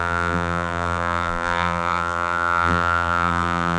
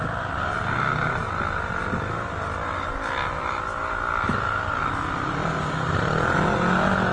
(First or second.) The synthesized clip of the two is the first